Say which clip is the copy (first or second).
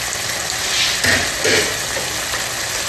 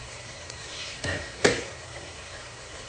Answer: second